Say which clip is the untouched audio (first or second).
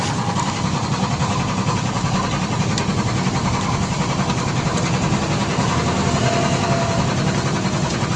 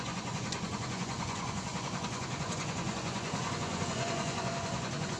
first